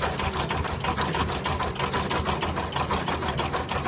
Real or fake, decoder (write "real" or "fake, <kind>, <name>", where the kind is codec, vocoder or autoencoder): real